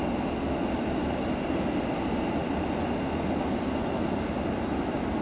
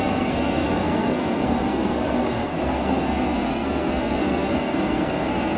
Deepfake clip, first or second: second